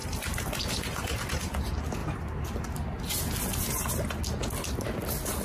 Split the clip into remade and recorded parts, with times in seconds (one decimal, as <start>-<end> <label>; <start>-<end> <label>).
0.0-5.4 recorded